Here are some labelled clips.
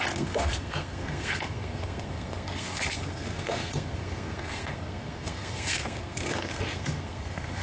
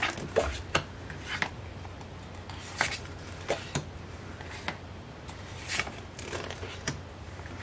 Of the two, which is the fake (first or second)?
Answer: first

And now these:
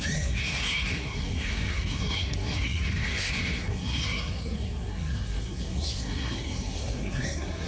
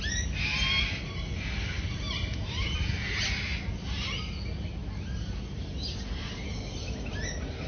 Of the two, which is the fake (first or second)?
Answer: first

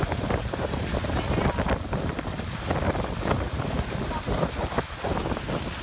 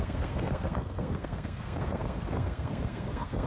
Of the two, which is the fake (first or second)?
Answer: second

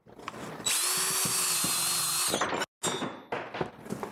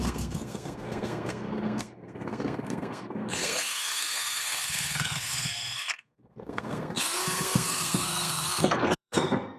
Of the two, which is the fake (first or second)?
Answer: second